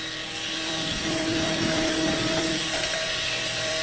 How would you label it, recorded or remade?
remade